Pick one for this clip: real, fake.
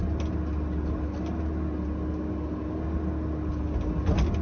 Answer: real